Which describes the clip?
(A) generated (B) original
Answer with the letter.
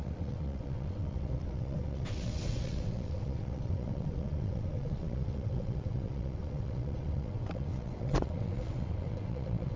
A